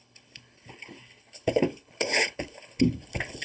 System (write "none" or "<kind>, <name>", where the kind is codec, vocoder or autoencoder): codec, HILCodec